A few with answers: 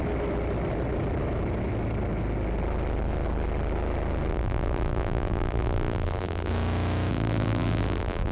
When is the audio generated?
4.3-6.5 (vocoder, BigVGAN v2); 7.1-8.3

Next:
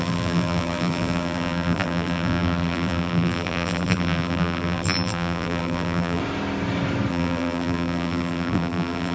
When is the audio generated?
0.0-6.2 (vocoder, BigVGAN v2); 7.1-9.1

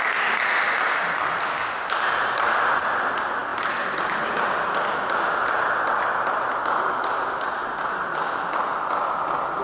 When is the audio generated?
none